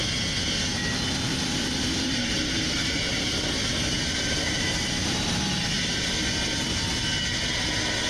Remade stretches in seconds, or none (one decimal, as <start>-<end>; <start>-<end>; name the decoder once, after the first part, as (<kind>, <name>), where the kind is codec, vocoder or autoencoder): 1.3-3.2 (vocoder, BigVGAN v2); 3.6-5.4